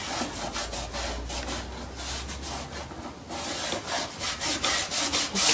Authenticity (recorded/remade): recorded